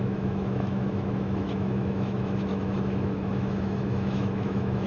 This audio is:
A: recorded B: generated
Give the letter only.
B